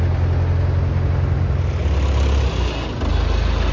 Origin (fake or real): real